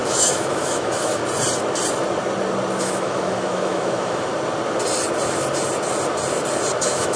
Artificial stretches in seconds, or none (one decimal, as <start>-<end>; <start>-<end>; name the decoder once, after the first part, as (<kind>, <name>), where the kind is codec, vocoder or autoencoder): 0.0-1.2 (autoencoder, DAC-VAE); 2.8-4.3; 6.8-7.2